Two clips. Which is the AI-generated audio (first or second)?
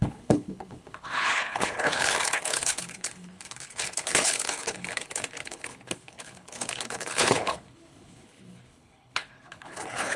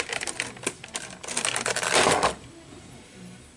first